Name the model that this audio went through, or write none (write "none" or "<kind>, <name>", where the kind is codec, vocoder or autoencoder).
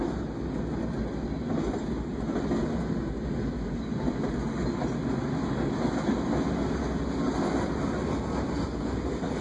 none